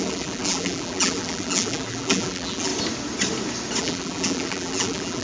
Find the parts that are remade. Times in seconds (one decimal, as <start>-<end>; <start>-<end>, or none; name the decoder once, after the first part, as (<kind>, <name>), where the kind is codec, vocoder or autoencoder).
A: 0.0-2.7 (vocoder, BigVGAN v2); 3.8-5.2